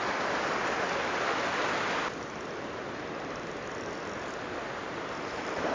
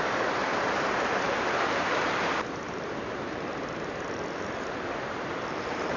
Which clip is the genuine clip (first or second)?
first